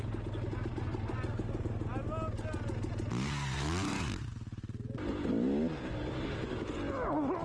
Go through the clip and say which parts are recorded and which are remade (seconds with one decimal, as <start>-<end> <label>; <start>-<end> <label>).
0.0-7.4 recorded